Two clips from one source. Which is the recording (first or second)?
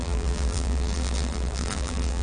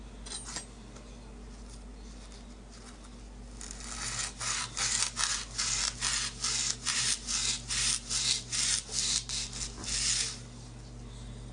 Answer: second